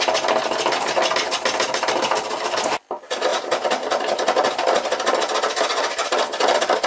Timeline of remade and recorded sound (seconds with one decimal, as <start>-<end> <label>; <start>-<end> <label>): 0.0-6.9 recorded